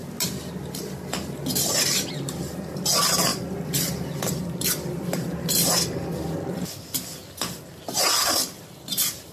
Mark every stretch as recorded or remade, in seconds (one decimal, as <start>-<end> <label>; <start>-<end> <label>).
0.0-3.3 recorded; 3.3-6.8 remade; 6.8-7.2 recorded; 7.2-8.7 remade; 8.7-9.3 recorded